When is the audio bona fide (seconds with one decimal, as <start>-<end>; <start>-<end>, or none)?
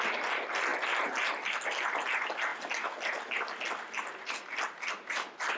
0.0-5.6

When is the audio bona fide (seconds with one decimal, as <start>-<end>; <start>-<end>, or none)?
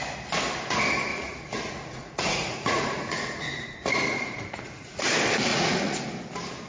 0.0-1.1; 5.1-5.5; 6.0-6.7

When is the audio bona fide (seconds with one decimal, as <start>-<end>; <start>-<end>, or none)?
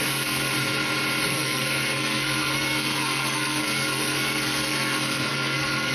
0.5-1.3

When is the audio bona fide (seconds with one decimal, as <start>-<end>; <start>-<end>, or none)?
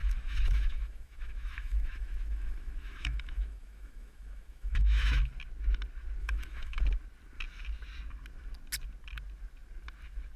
5.3-6.2; 6.8-10.4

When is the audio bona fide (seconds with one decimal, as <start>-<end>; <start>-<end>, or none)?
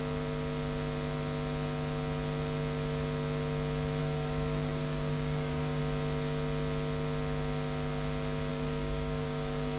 0.0-4.0; 5.8-8.5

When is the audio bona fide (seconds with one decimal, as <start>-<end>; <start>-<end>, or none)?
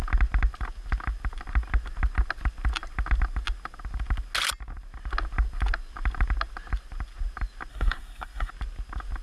0.0-7.7; 8.5-9.2